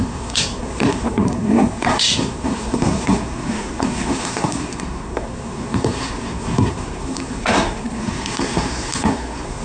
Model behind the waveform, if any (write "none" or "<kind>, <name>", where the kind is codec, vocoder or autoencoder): codec, SNAC